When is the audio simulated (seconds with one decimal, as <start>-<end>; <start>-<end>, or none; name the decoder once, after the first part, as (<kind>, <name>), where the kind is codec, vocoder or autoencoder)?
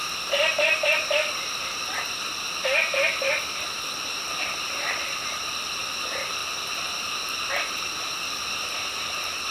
0.0-9.5 (vocoder, BigVGAN v2)